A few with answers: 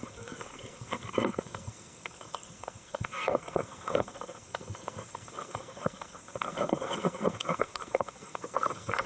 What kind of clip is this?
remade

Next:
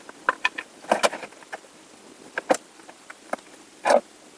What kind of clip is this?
recorded